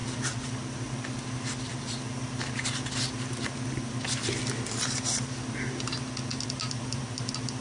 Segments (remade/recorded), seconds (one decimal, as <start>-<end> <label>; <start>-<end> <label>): 0.0-7.6 recorded